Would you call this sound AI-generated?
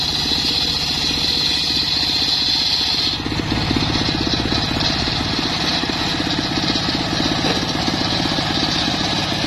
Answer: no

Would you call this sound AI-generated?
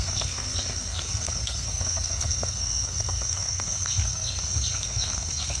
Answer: yes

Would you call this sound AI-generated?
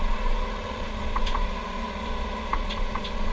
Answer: yes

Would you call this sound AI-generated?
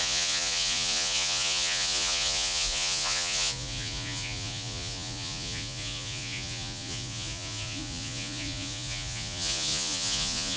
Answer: yes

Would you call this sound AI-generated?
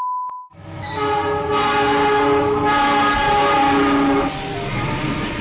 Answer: no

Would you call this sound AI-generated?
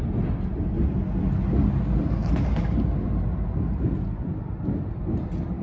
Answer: no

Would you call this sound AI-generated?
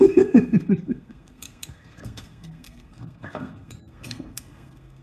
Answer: yes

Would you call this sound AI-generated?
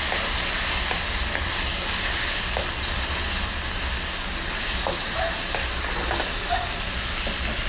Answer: no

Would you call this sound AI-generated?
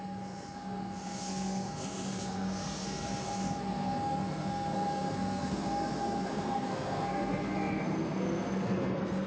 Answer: yes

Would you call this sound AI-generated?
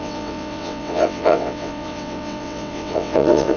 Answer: yes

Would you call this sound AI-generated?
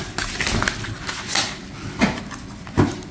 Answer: no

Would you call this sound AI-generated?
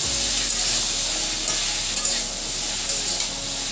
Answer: no